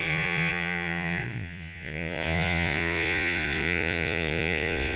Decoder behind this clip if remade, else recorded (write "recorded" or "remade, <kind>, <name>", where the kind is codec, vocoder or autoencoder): remade, vocoder, Vocos